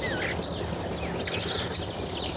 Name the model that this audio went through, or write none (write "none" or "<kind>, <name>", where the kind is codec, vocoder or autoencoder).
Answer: none